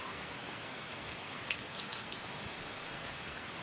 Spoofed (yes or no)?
yes